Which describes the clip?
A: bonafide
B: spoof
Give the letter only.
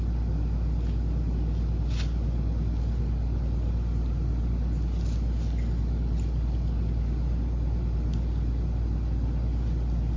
A